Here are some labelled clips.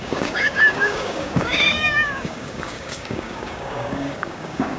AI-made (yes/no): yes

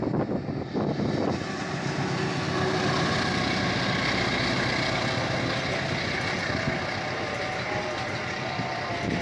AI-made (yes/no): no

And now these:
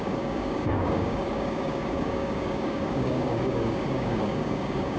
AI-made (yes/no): yes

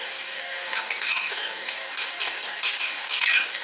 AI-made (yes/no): yes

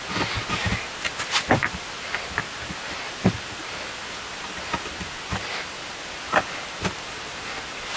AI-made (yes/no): no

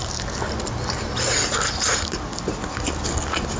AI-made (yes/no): no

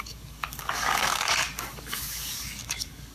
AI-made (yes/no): yes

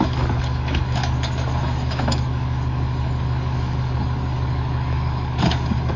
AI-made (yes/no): yes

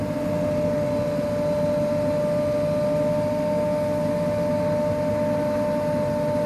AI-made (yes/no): no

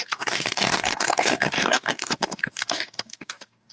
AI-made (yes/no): yes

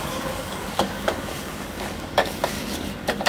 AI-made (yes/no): yes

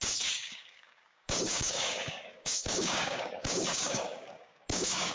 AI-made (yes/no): yes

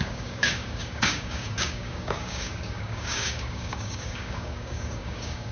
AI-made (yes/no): yes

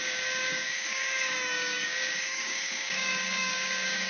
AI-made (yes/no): yes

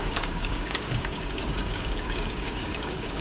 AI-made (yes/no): yes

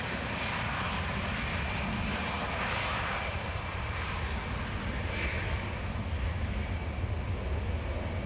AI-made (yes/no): no